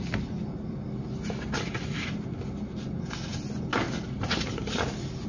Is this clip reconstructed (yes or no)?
no